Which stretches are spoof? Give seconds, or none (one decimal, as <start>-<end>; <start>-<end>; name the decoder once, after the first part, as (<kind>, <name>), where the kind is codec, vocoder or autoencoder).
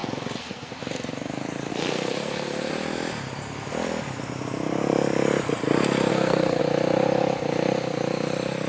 0.0-0.7 (codec, SNAC); 1.7-2.7; 6.1-6.6